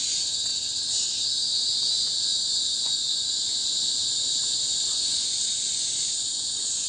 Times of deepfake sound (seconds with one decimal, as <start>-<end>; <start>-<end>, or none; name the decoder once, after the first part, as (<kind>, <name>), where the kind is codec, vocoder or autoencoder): 0.0-0.5 (vocoder, Vocos); 1.5-6.9